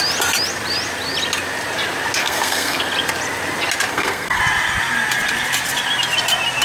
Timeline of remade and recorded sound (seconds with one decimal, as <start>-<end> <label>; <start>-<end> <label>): 0.0-2.2 recorded; 2.2-2.9 remade; 2.9-3.9 recorded; 3.9-4.4 remade; 4.4-6.6 recorded